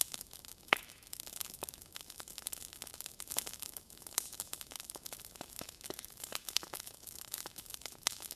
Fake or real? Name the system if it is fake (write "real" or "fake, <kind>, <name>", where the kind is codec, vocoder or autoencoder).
fake, autoencoder, DAC-VAE